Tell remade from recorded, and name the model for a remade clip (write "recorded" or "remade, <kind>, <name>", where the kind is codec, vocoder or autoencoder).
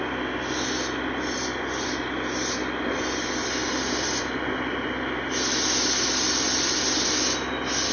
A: recorded